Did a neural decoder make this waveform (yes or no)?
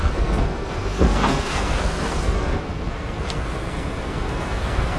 yes